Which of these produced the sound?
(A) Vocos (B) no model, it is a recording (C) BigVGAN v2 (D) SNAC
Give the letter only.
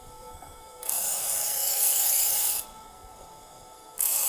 D